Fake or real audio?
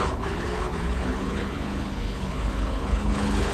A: fake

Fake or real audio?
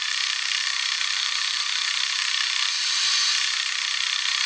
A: fake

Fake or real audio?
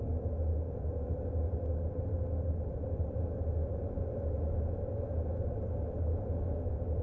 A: real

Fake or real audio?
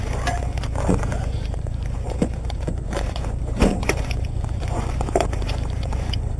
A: fake